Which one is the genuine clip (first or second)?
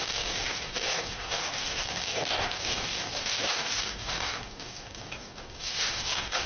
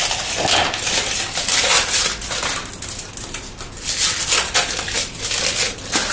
second